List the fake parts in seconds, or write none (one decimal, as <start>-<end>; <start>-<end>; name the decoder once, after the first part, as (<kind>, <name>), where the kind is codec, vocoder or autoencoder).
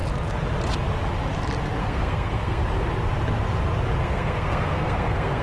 1.8-2.6 (codec, SNAC); 4.0-5.4